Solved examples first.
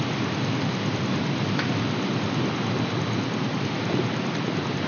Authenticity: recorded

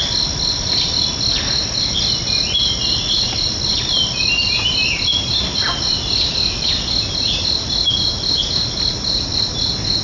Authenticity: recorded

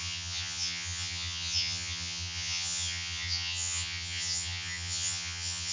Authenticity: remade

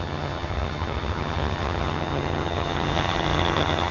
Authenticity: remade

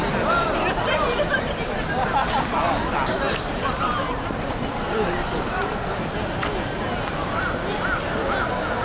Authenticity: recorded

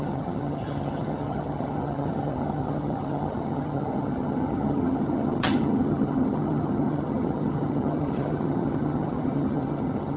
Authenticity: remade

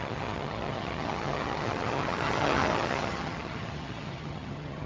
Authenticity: remade